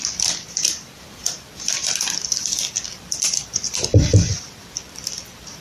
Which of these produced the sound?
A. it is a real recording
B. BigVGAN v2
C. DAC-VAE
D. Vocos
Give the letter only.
B